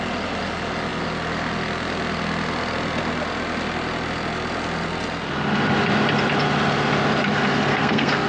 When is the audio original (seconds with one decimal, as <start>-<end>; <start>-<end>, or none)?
0.0-7.7